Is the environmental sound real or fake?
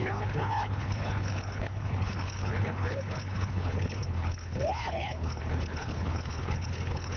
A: fake